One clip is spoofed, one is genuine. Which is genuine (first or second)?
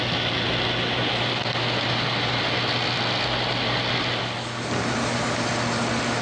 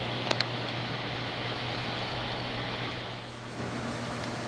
first